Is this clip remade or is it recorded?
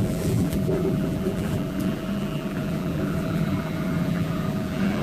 remade